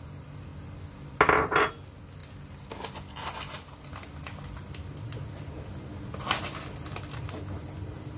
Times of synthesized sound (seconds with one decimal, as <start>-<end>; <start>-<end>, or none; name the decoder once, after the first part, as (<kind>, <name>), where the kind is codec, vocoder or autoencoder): none